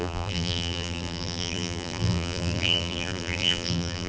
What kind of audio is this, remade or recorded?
remade